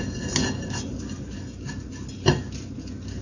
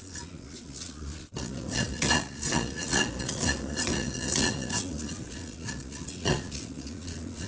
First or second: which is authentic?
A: first